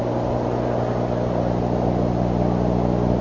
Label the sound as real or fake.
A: real